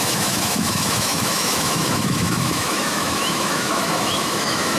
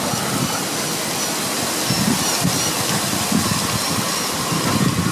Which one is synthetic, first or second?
first